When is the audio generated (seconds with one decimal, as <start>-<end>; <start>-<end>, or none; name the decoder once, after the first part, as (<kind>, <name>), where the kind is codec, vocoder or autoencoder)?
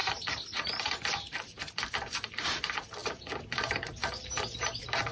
none